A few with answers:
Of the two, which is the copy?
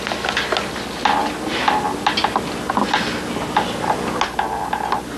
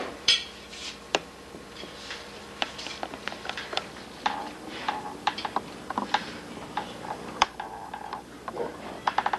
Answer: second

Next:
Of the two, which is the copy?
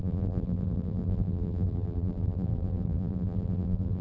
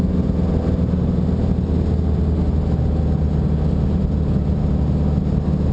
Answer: first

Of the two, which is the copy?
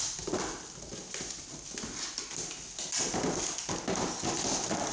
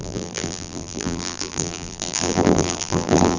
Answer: second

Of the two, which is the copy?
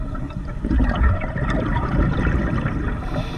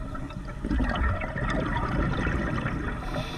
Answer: first